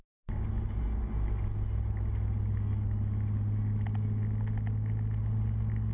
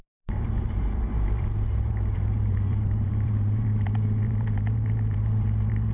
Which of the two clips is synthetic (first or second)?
second